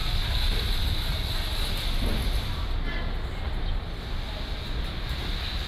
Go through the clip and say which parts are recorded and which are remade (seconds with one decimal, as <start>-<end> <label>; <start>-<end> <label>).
0.0-5.7 recorded